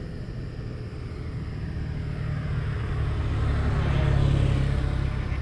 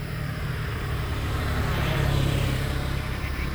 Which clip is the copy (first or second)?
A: second